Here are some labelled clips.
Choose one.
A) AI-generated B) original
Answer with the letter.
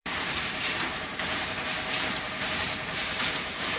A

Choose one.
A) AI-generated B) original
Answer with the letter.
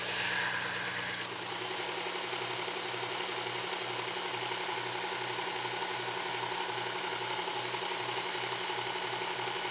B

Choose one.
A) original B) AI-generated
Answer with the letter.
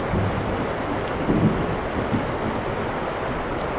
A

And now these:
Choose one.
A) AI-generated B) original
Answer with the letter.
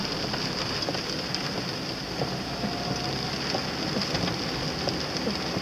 B